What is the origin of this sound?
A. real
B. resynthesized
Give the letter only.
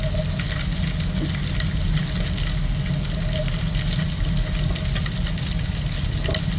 A